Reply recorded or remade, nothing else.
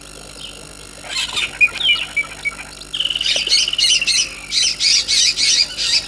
recorded